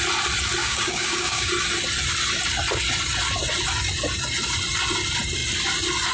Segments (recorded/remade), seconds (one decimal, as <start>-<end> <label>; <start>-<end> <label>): 0.0-0.6 recorded; 0.6-1.5 remade; 1.5-6.1 recorded